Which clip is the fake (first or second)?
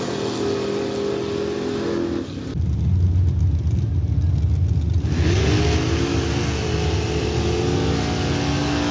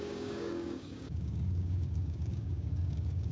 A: second